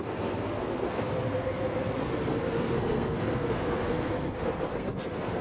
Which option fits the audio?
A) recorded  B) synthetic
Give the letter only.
B